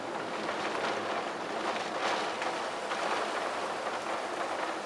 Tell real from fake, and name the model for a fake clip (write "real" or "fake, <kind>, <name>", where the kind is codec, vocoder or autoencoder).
real